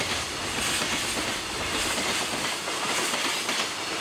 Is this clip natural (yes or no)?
yes